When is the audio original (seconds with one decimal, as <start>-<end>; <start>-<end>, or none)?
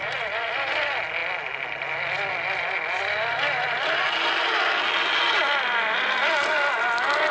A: 0.0-7.3